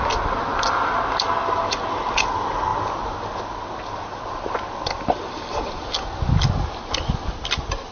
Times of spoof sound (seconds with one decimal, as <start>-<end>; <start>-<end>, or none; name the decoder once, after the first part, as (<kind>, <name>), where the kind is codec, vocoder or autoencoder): none